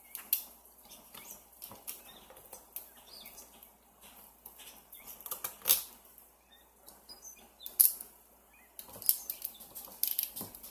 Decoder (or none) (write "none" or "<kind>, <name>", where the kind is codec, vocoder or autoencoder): none